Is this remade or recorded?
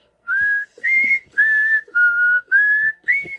remade